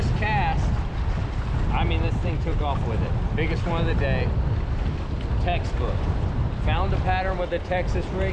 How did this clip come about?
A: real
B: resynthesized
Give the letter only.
A